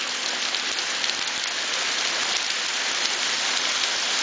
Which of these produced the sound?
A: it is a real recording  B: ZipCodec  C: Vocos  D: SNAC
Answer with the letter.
A